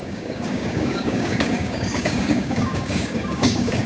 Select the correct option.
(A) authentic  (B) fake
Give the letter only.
B